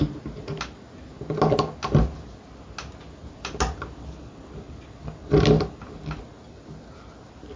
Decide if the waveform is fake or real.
real